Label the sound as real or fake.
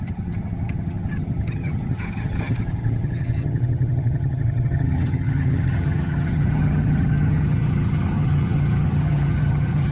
fake